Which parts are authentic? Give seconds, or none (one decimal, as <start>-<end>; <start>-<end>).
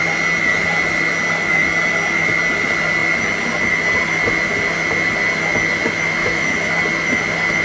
0.0-6.2; 6.8-7.6